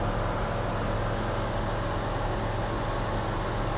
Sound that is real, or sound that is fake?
real